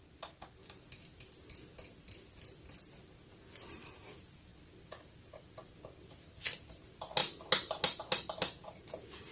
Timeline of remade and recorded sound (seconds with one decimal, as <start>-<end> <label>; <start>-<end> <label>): 0.0-9.3 recorded